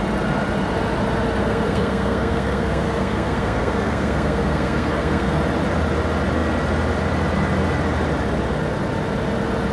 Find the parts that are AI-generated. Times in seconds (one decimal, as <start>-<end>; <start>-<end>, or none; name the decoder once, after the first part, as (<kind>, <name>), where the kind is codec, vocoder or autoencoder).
1.4-5.4 (codec, SNAC)